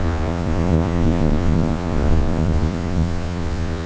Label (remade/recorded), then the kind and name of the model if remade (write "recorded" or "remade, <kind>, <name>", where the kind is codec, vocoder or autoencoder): remade, vocoder, Vocos